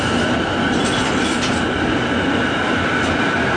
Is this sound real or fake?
real